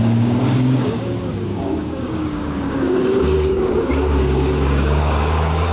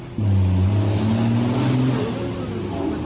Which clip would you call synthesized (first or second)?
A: first